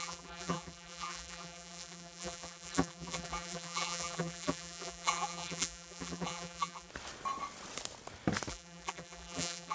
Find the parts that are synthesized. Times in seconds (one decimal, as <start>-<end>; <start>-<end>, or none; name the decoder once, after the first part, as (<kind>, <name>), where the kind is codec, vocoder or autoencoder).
0.0-6.9 (vocoder, BigVGAN v2); 8.5-9.7